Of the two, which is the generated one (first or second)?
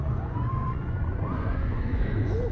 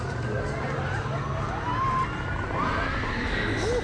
first